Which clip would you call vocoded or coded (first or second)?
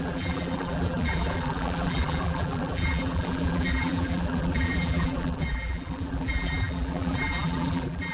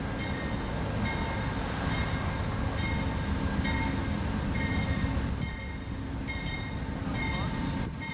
first